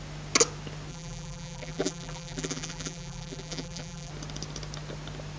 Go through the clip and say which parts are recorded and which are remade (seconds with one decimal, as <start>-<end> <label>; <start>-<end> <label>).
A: 0.0-0.9 recorded; 0.9-4.1 remade; 4.1-5.4 recorded